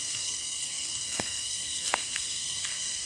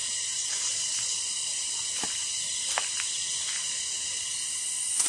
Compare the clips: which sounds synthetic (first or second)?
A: first